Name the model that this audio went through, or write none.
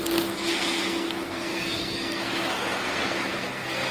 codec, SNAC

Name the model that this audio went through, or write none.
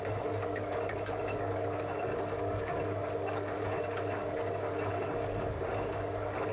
codec, DAC